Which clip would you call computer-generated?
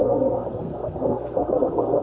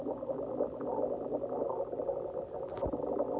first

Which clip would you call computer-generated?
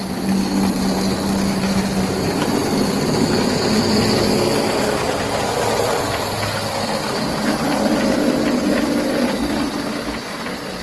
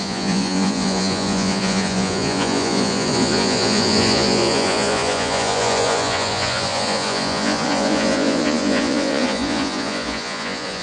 second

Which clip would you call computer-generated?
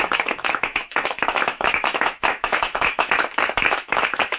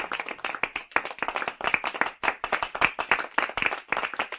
first